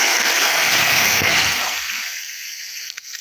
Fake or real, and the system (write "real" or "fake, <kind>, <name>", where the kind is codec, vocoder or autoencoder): fake, codec, SNAC